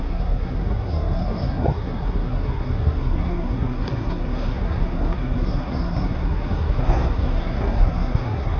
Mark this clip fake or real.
fake